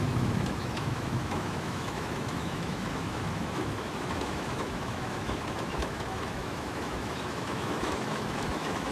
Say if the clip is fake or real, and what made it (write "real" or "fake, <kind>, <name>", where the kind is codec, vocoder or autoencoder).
fake, autoencoder, DAC-VAE